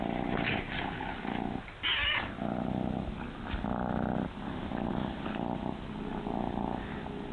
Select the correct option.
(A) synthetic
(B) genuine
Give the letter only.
B